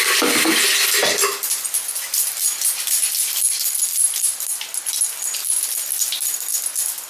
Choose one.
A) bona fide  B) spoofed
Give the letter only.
A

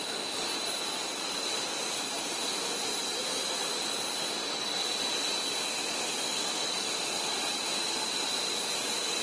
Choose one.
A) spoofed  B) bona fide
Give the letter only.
B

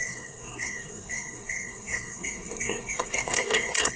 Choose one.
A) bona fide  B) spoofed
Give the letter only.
B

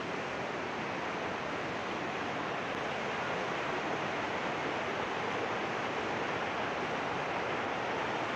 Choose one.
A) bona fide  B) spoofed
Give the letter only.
A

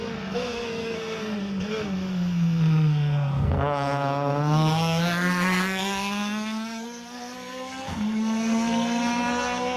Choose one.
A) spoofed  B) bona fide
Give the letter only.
A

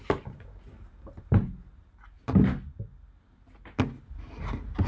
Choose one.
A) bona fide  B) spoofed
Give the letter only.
A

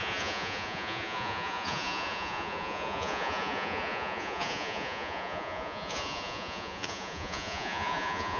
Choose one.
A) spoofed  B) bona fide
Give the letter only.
A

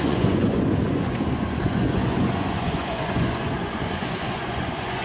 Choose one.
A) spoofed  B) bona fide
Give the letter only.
A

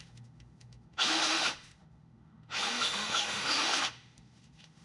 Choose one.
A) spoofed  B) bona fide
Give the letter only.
A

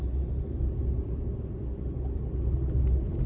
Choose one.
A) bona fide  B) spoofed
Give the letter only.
A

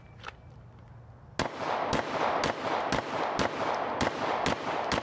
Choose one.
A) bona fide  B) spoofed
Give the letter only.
A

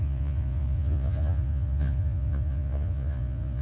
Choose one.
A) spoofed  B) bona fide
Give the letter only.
A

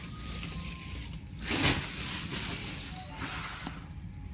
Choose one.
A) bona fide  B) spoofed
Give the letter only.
A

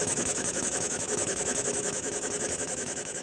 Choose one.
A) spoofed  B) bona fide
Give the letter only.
A